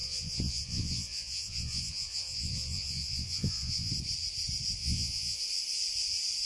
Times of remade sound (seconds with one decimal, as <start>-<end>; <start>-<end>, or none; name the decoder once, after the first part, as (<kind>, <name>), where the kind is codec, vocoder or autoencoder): 0.0-3.9 (vocoder, Vocos); 4.8-5.4